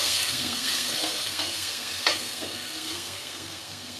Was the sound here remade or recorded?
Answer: remade